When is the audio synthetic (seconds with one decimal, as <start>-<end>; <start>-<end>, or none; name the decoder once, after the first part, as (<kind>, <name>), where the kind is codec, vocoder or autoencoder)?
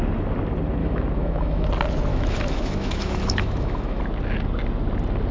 0.8-1.7 (autoencoder, DAC-VAE); 2.1-4.0